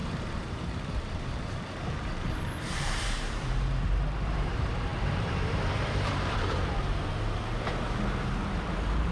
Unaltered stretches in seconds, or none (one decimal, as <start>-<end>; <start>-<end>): none